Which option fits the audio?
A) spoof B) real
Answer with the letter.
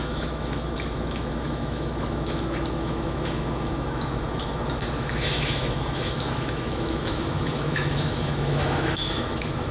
A